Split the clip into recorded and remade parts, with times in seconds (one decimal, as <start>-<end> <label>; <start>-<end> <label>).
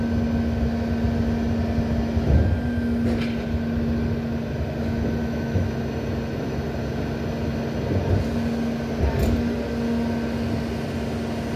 0.0-5.2 recorded; 5.2-5.7 remade; 5.7-11.6 recorded